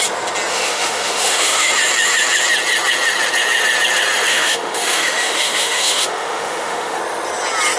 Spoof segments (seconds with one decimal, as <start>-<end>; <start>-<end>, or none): 0.5-1.7; 4.3-7.0

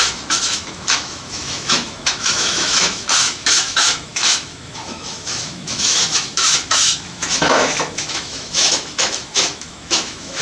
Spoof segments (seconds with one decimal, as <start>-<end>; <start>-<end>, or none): 0.0-10.4

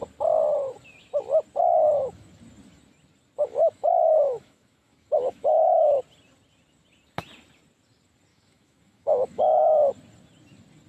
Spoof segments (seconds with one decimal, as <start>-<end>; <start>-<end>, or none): 1.6-2.3; 3.4-6.0; 8.3-9.9

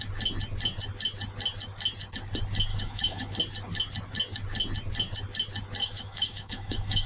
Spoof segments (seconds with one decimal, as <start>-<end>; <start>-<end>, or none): 2.7-3.3; 5.8-7.1